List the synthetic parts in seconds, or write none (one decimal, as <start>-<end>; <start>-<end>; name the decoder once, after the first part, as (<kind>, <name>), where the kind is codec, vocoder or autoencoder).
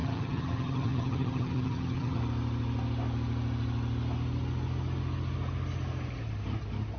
0.0-2.2 (vocoder, HiFi-GAN)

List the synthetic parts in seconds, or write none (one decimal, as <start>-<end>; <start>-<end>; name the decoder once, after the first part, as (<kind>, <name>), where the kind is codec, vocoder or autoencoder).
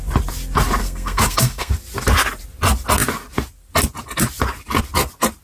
0.8-1.7 (codec, SNAC)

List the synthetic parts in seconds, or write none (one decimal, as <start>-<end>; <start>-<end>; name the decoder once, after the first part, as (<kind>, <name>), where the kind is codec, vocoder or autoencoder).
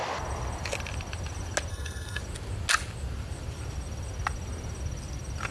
1.7-2.2 (codec, SNAC)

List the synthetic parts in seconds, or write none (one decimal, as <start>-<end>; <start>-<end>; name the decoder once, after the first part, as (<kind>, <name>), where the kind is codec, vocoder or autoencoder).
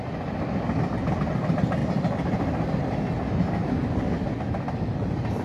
none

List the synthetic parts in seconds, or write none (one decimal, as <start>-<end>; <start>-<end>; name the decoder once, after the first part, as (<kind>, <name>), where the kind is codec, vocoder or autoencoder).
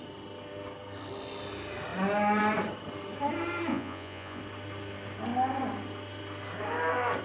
3.7-4.4 (vocoder, Vocos)